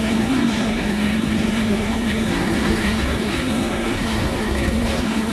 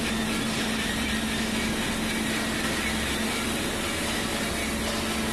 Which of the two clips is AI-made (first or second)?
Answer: first